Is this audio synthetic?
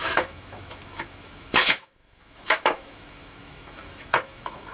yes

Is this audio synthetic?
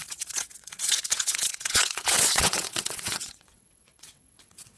yes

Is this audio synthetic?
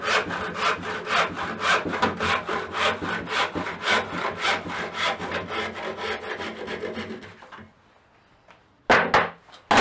no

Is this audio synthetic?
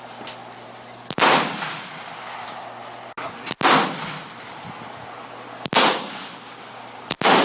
no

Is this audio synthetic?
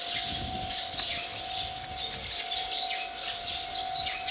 no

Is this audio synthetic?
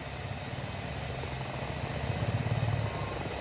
no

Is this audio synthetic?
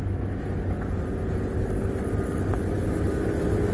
no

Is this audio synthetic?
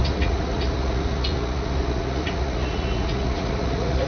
yes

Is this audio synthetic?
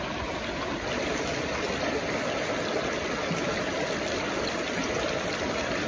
no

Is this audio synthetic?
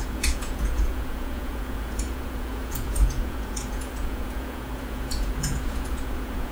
yes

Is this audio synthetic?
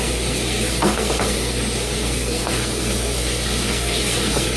yes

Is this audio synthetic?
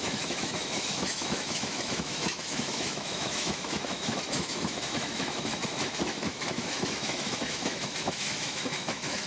yes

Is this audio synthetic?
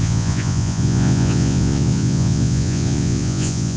yes